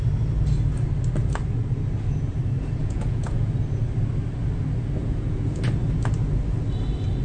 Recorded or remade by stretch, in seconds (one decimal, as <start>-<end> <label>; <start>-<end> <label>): 0.0-2.8 recorded; 2.8-3.5 remade; 3.5-5.0 recorded; 5.0-5.6 remade; 5.6-7.2 recorded